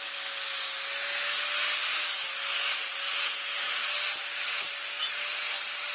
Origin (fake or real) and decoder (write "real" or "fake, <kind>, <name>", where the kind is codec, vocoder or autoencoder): real